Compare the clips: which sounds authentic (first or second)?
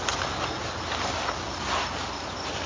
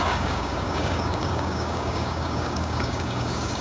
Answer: first